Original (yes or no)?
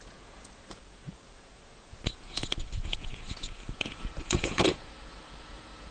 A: no